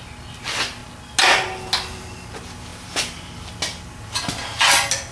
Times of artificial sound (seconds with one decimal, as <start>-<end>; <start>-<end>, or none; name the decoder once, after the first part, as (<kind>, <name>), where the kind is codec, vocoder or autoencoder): none